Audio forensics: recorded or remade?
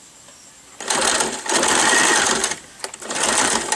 recorded